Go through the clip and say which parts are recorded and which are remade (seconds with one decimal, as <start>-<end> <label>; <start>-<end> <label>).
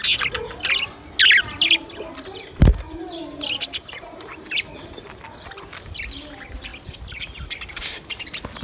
0.0-8.6 recorded